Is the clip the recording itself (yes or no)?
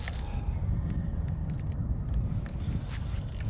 yes